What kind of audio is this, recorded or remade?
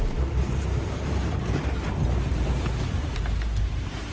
remade